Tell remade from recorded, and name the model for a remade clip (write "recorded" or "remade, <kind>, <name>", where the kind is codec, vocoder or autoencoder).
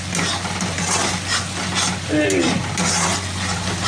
recorded